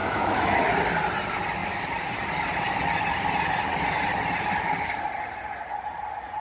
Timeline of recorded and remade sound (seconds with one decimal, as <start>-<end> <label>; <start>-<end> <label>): 0.0-0.6 remade; 0.6-6.4 recorded